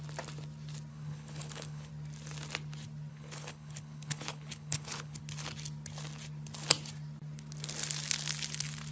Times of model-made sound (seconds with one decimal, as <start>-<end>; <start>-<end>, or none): 0.9-1.9; 3.1-5.2